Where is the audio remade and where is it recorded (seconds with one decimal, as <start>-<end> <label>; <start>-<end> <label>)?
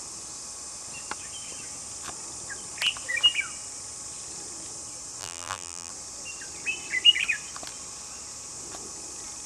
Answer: 0.0-5.2 recorded; 5.2-5.9 remade; 5.9-9.5 recorded